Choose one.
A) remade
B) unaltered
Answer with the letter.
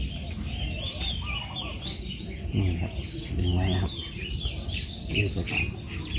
B